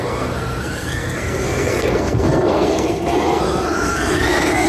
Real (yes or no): no